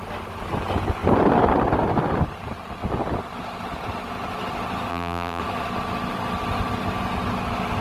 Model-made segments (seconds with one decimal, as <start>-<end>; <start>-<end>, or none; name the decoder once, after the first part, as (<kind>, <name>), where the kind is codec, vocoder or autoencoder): 4.9-5.4 (vocoder, BigVGAN v2)

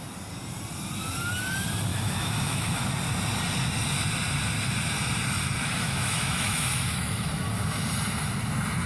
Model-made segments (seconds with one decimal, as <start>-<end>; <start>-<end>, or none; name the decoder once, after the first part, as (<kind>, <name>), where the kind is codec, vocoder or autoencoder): 1.9-2.8 (autoencoder, DAC-VAE); 5.6-7.3

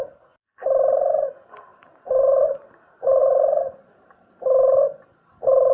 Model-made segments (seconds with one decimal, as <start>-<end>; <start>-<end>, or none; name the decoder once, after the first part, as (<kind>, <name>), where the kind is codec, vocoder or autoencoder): 1.7-2.7 (vocoder, BigVGAN v2); 3.2-4.3

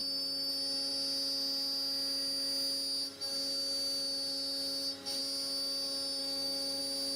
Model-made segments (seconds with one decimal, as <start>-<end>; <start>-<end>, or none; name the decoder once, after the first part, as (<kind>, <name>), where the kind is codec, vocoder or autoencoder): 0.0-0.5 (autoencoder, DAC-VAE); 6.2-6.8